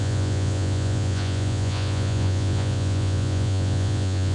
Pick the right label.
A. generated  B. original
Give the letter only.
A